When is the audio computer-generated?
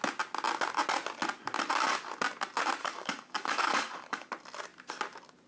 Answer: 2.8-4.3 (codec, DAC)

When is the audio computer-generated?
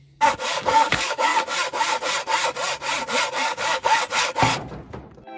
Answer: 0.0-1.3 (codec, DAC); 3.3-4.0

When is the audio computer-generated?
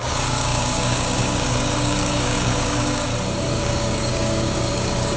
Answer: 0.0-3.1 (codec, DAC); 3.6-5.2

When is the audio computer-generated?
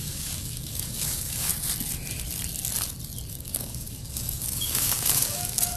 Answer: 0.0-1.5 (codec, DAC); 3.3-5.8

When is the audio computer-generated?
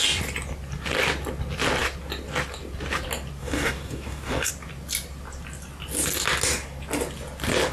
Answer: 3.4-4.5 (codec, DAC)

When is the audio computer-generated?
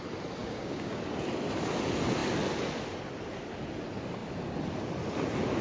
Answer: 0.4-1.0 (codec, DAC)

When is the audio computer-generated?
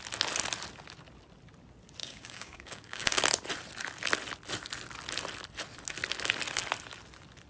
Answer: 2.0-3.2 (codec, DAC)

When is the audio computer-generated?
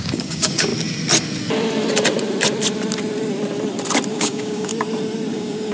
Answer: 0.0-0.7 (codec, DAC); 4.1-4.7; 5.3-5.7